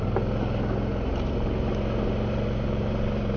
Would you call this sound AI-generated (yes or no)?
no